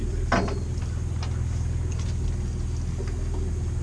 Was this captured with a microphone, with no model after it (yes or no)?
yes